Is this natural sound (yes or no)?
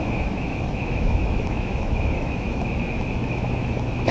no